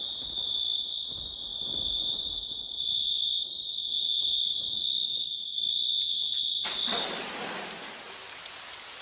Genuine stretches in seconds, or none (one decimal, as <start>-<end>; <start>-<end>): 0.0-9.0